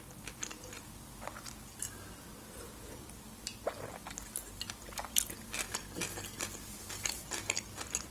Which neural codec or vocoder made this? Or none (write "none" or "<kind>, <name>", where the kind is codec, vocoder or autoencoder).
none